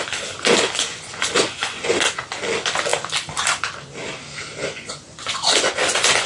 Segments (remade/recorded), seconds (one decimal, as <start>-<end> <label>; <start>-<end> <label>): 0.0-0.9 recorded; 0.9-2.0 remade; 2.0-4.6 recorded; 4.6-6.3 remade